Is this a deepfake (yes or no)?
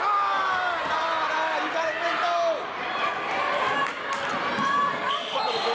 no